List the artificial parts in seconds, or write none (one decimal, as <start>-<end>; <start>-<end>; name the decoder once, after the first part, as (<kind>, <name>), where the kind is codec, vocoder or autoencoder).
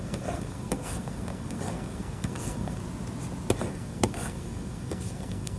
0.0-2.8 (codec, SNAC); 3.6-5.6